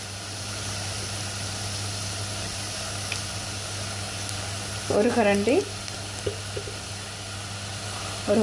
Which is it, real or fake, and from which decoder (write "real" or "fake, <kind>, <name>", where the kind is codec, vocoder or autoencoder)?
real